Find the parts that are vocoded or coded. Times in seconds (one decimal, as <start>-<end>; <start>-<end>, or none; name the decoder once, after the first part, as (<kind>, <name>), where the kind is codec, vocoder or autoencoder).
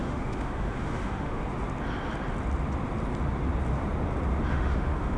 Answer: 0.0-1.4 (autoencoder, DAC-VAE); 4.5-5.2